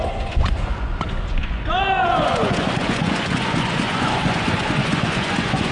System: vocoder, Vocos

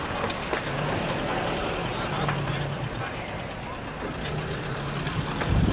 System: none